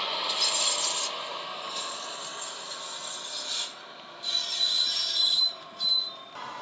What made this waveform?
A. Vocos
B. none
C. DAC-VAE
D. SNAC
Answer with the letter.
B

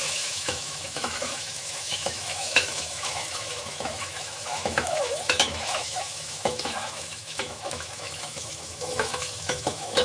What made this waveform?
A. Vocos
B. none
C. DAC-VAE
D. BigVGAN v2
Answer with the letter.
C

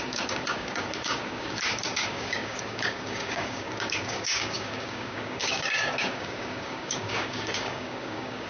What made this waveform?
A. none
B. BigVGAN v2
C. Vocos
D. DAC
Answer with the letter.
D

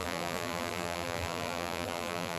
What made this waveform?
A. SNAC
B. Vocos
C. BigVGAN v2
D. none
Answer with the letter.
C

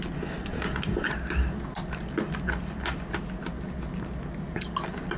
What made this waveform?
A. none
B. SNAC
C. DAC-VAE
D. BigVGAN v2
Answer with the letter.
A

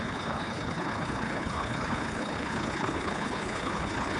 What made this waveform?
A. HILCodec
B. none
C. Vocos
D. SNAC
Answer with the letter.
A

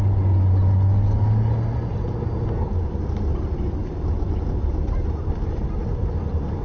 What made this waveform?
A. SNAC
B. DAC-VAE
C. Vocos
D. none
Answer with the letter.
D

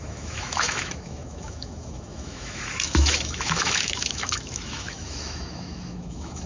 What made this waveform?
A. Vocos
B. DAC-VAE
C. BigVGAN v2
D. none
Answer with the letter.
B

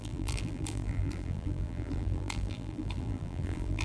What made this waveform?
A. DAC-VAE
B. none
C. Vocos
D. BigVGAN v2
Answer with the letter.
D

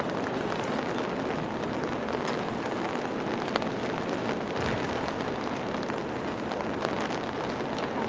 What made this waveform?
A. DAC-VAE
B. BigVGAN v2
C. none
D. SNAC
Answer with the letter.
C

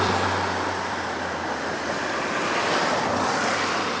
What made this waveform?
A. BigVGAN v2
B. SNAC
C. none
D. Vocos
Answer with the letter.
A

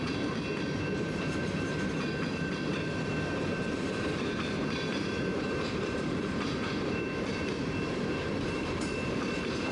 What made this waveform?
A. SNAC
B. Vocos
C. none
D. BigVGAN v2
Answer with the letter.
D